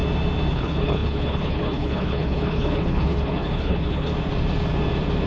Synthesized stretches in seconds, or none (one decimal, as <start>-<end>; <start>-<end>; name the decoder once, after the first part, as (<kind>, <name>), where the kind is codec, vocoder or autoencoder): 0.5-4.1 (codec, HILCodec)